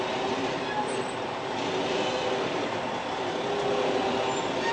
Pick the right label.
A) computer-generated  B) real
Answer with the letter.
B